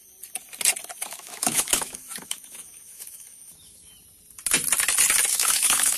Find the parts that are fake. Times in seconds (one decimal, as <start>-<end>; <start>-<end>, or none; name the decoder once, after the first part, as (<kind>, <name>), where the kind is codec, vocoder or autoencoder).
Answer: 1.0-3.9 (autoencoder, DAC-VAE); 5.3-6.0

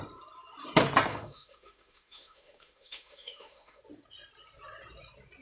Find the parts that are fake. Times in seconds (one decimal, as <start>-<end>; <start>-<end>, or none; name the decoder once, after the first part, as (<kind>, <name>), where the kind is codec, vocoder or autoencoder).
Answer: 1.1-3.8 (autoencoder, DAC-VAE)

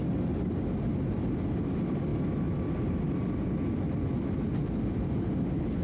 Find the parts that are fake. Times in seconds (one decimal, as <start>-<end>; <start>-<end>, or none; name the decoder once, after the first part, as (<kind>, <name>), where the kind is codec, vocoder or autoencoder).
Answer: none

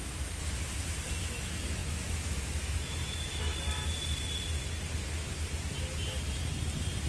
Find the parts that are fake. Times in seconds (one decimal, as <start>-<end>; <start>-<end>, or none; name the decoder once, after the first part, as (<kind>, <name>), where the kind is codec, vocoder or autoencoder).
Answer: 0.0-0.4 (autoencoder, DAC-VAE); 1.2-3.5

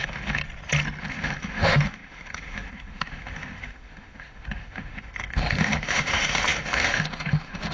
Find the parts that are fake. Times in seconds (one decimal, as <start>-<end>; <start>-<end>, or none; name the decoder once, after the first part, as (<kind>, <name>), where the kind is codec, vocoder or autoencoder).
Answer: 0.0-0.4 (autoencoder, DAC-VAE); 1.0-7.7